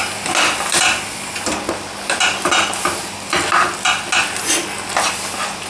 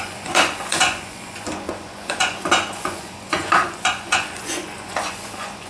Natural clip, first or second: first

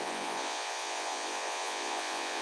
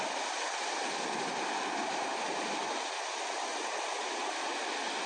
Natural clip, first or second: second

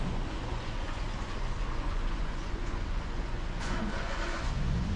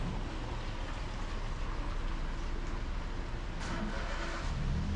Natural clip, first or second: second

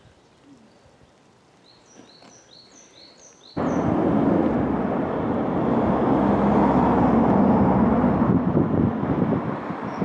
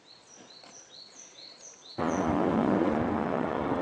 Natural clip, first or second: first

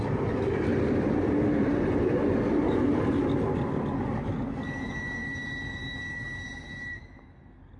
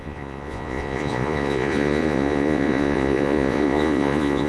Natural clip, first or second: first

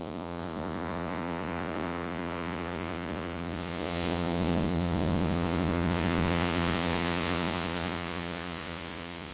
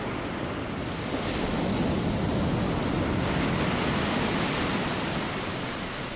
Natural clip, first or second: second